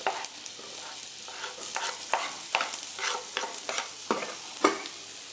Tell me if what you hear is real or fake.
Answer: real